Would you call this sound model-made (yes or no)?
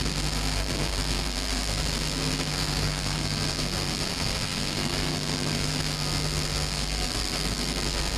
yes